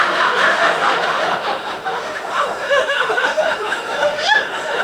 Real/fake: fake